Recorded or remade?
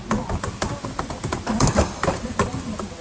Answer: recorded